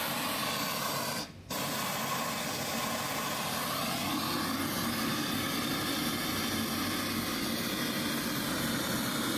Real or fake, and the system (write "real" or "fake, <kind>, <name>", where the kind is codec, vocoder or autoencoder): real